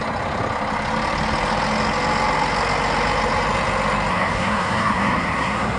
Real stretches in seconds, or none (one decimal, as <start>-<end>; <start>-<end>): 0.0-4.1